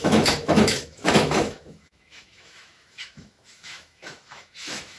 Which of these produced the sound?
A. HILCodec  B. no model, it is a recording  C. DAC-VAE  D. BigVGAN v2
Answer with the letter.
C